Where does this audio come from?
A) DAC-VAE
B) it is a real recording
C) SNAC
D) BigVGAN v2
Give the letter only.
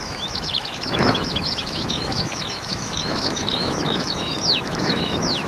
A